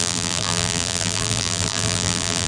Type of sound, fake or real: fake